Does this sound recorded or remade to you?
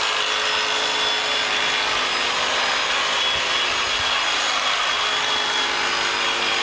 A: recorded